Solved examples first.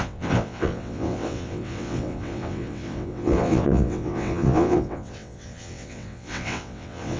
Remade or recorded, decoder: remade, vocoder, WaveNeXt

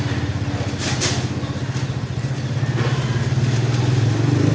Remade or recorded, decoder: recorded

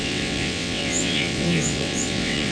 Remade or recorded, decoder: remade, vocoder, WaveNeXt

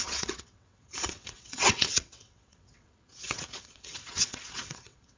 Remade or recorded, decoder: remade, vocoder, WaveNeXt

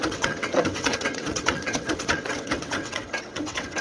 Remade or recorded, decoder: remade, vocoder, WaveNeXt